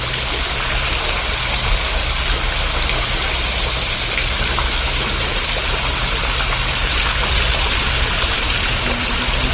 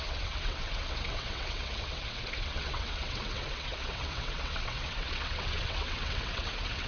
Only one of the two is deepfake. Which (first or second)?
second